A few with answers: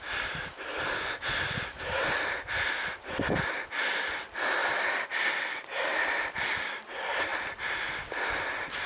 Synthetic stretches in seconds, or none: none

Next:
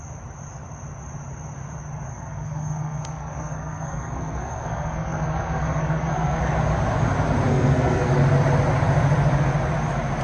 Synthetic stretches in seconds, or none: 2.1-6.4 (codec, SNAC); 7.5-8.1